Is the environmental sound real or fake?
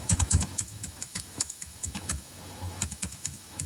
fake